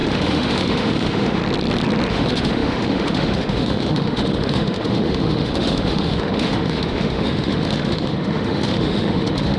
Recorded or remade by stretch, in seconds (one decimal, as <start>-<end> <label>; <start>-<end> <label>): 0.0-1.4 remade; 1.4-2.1 recorded; 2.1-9.6 remade